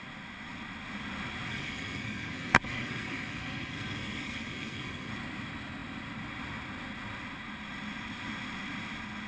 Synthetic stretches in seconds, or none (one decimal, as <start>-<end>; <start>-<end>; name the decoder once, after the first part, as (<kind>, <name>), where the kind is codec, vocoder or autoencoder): 1.5-5.1 (codec, SNAC)